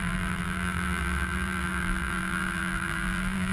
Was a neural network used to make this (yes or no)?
yes